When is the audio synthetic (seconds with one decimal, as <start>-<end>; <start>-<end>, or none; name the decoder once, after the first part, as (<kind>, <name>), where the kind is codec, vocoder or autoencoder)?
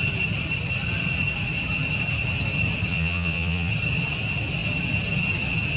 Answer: 2.9-3.7 (vocoder, Vocos)